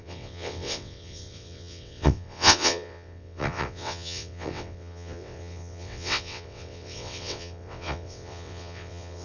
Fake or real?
fake